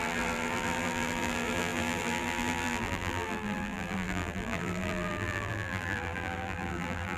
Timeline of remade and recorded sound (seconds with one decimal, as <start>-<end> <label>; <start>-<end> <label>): 0.0-7.2 remade